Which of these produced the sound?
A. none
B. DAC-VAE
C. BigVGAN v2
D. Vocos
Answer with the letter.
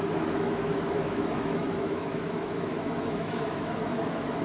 B